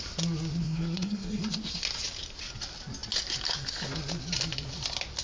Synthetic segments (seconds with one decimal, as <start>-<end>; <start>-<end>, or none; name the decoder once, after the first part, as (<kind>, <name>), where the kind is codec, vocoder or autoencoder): 0.6-1.4 (codec, SNAC)